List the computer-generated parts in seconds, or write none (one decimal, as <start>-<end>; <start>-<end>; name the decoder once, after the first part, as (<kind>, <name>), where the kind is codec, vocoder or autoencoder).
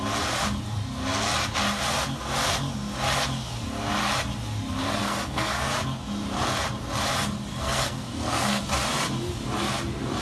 4.8-5.7 (codec, SNAC); 7.5-8.6